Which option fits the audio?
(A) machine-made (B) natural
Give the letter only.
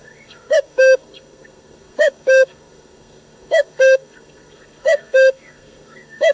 A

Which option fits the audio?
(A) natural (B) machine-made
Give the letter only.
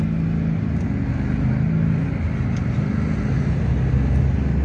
A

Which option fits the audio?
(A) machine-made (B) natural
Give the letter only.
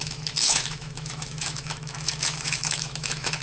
A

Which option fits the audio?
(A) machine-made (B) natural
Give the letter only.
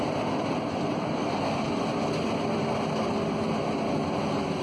B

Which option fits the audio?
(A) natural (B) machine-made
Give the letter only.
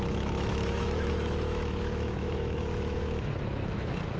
B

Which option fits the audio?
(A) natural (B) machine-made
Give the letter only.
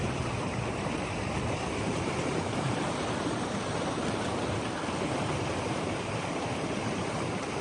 B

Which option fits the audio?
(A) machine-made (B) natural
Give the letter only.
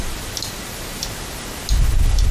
B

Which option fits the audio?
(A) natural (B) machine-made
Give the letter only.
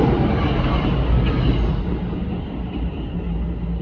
A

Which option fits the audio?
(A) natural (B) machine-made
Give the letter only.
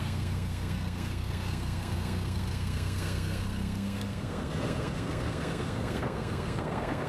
B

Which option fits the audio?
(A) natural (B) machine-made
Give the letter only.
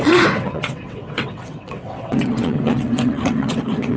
B